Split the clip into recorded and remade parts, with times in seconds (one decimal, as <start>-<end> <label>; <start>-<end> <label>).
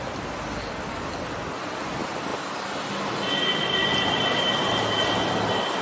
0.0-5.8 recorded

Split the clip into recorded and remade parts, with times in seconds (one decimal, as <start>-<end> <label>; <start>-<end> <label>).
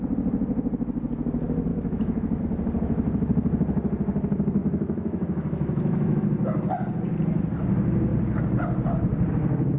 0.0-1.7 recorded; 1.7-2.4 remade; 2.4-4.6 recorded; 4.6-6.2 remade; 6.2-9.8 recorded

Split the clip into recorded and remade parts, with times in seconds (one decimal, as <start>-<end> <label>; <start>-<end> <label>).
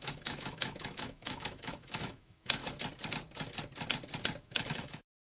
0.0-2.6 remade; 2.6-4.4 recorded; 4.4-5.4 remade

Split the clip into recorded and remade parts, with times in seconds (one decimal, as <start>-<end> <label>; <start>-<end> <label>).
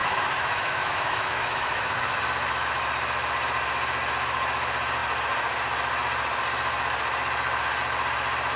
0.0-2.2 remade; 2.2-8.6 recorded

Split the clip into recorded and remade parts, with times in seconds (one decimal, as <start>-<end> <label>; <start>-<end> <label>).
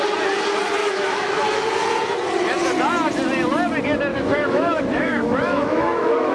0.0-0.8 recorded; 0.8-1.4 remade; 1.4-4.1 recorded; 4.1-6.3 remade